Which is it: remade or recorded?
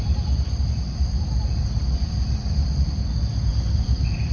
recorded